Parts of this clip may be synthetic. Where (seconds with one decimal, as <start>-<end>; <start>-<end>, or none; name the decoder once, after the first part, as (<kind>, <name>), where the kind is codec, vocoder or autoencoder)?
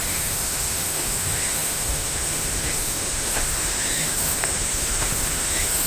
0.0-5.9 (autoencoder, DAC-VAE)